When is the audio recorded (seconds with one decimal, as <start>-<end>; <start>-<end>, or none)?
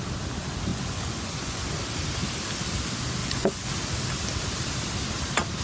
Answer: 0.0-0.7; 1.6-3.2; 3.7-5.6